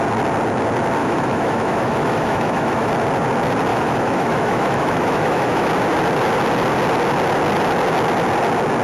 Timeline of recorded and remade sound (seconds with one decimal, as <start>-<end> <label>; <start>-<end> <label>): 0.0-1.0 recorded; 1.0-2.9 remade; 2.9-3.7 recorded; 3.7-5.7 remade; 5.7-8.8 recorded